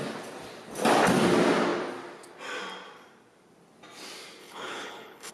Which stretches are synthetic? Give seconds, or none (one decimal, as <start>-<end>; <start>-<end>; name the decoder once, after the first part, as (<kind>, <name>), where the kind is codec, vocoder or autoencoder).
4.4-5.3 (codec, HILCodec)